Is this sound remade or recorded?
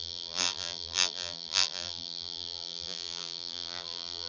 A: remade